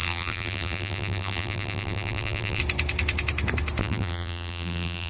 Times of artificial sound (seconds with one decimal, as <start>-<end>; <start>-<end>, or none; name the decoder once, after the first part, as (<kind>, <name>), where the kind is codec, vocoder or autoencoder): 0.0-2.6 (vocoder, BigVGAN v2); 3.8-5.1